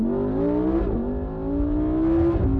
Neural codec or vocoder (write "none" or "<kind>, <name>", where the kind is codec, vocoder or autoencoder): none